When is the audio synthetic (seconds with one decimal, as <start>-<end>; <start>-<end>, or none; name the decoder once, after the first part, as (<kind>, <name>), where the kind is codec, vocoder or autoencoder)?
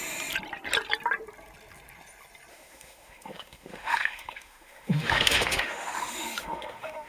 2.5-7.1 (autoencoder, DAC-VAE)